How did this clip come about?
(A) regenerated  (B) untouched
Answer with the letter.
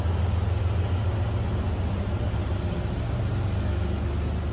B